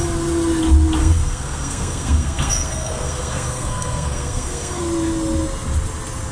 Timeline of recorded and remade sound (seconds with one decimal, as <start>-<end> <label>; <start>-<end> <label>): 0.0-1.0 recorded; 1.0-4.8 remade; 4.8-6.3 recorded